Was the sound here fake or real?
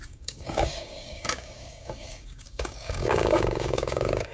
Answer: fake